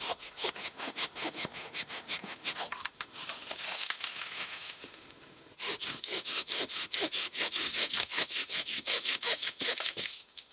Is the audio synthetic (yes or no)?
yes